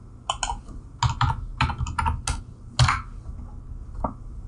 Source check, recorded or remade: recorded